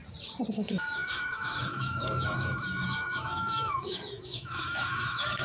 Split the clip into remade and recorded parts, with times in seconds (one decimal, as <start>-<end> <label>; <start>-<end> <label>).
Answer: 0.0-0.5 recorded; 0.5-5.4 remade